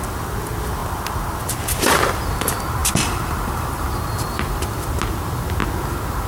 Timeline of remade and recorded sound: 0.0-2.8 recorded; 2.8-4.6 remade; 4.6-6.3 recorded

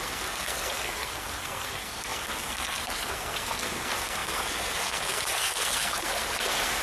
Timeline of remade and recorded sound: 0.0-6.8 remade

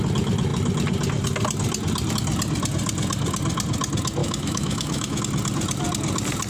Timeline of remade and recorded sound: 0.0-4.2 recorded; 4.2-5.2 remade; 5.2-6.5 recorded

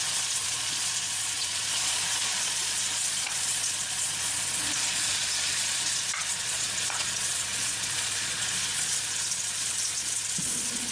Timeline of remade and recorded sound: 0.0-10.9 remade